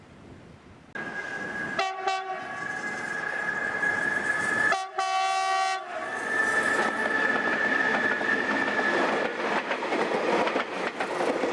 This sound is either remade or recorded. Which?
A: recorded